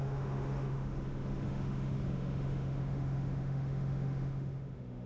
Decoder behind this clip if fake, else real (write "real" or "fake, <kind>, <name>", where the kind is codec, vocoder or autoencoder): fake, autoencoder, DAC-VAE